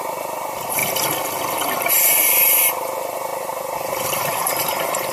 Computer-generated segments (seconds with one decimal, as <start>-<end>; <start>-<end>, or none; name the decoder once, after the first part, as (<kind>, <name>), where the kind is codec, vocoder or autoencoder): 0.0-0.8 (vocoder, BigVGAN v2); 2.1-5.1